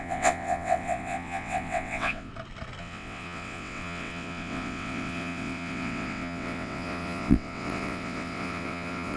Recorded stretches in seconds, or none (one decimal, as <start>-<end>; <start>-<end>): 2.3-2.8